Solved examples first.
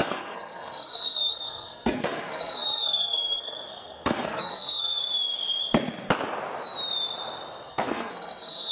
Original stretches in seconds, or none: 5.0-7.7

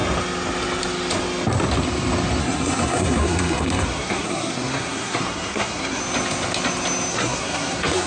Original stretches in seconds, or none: 0.0-2.4; 6.0-7.1